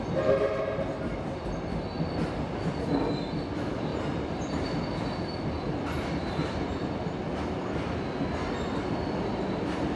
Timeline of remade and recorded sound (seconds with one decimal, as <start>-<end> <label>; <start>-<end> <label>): 0.0-3.9 recorded; 3.9-4.5 remade; 4.5-6.2 recorded; 6.2-7.2 remade; 7.2-10.0 recorded